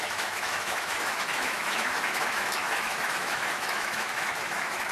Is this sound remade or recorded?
remade